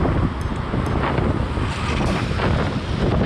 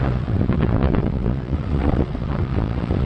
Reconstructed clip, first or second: second